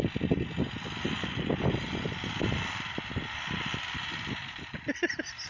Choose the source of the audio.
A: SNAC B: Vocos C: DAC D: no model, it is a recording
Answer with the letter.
D